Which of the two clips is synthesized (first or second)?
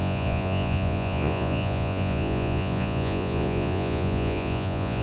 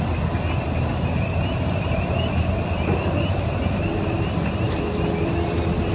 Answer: first